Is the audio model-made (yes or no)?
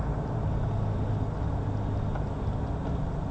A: no